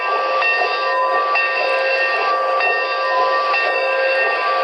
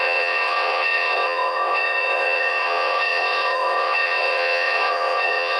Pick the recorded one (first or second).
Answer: first